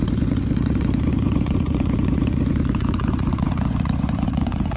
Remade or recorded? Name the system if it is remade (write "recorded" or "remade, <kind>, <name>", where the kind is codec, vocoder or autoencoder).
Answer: remade, vocoder, Vocos